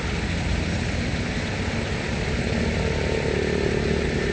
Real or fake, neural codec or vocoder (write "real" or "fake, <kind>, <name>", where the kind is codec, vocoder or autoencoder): real